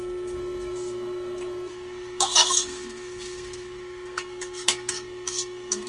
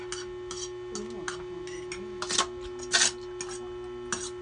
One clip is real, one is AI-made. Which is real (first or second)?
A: second